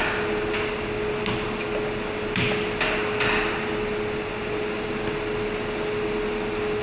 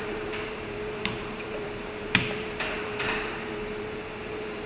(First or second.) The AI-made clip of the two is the second